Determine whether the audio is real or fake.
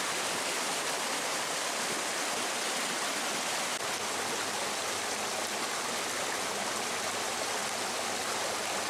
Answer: real